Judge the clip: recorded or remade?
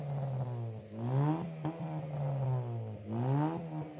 recorded